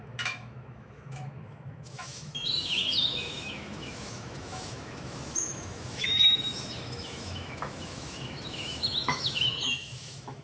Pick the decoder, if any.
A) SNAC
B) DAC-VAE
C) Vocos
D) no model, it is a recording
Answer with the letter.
B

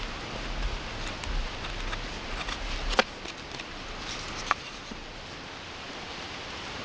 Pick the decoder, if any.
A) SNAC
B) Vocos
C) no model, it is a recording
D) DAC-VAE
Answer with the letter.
C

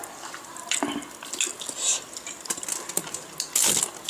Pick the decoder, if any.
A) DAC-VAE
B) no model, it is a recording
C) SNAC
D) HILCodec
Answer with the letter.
B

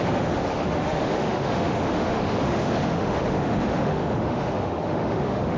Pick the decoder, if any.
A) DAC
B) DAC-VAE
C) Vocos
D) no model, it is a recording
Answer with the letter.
B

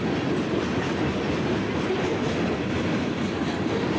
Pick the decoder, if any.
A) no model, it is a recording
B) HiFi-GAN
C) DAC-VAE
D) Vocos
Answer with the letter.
A